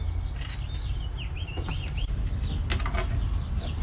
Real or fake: real